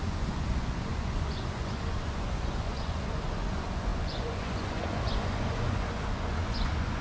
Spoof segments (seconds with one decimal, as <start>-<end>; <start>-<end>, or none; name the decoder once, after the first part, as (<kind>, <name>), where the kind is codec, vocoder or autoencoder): 0.0-7.0 (vocoder, Vocos)